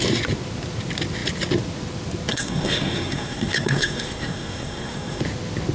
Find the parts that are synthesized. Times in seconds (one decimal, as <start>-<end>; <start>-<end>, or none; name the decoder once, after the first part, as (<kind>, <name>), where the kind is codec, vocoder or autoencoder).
2.3-5.2 (codec, SNAC)